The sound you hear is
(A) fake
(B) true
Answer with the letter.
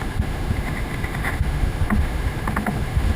A